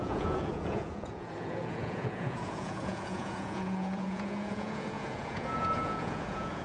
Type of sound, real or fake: fake